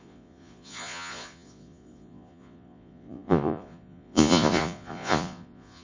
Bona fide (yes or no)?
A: no